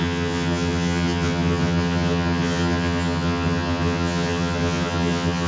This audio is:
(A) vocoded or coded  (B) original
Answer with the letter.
A